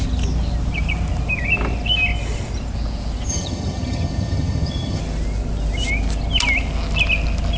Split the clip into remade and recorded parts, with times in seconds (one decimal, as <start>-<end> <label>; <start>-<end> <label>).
0.0-3.3 recorded; 3.3-5.0 remade; 5.0-7.6 recorded